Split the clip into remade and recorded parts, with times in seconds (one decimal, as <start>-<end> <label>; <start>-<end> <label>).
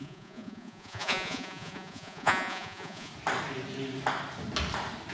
0.0-3.1 remade; 3.1-5.1 recorded